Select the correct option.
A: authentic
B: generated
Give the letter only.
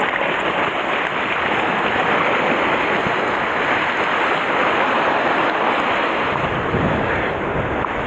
A